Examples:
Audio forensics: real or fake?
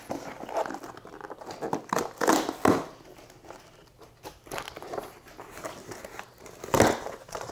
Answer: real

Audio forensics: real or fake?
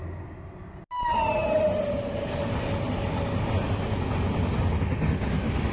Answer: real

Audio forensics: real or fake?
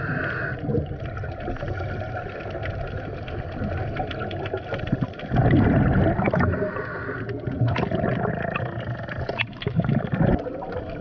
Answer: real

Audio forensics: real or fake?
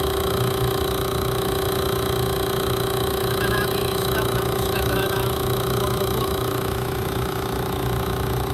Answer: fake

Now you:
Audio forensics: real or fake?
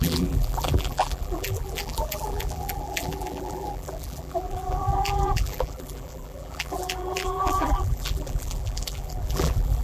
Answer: fake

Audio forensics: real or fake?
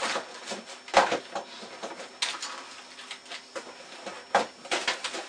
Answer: real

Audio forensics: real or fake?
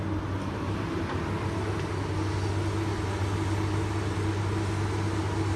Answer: real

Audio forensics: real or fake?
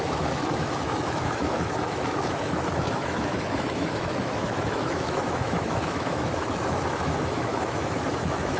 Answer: fake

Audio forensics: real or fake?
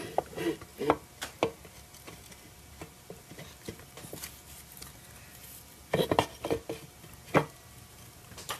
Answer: real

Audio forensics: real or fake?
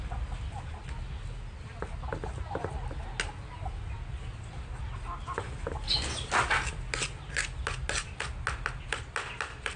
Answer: real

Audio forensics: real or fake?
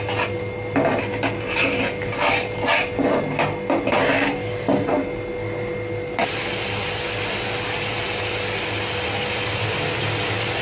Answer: real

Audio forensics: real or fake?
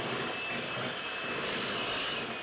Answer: real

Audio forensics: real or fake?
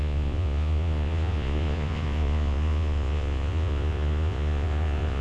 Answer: fake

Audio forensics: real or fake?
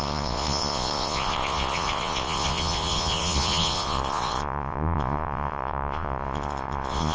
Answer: fake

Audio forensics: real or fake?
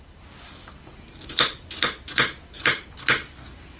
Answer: real